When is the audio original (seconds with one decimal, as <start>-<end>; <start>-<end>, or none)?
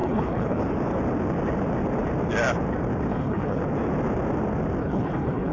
0.6-3.1; 3.6-4.8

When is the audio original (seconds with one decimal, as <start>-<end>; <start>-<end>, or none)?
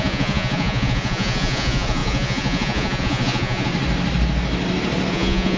3.7-5.1